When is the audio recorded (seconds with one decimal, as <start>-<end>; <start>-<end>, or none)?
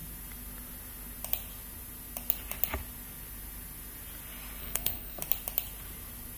0.0-4.6; 5.2-6.4